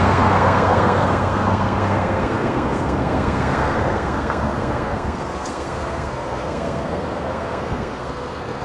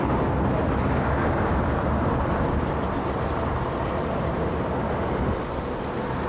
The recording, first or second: second